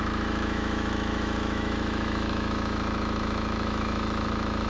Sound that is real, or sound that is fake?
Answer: fake